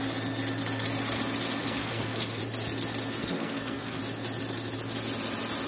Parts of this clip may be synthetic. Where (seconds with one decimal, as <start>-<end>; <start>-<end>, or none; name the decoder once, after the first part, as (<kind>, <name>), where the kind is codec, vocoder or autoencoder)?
1.6-2.4 (codec, SNAC); 3.2-4.0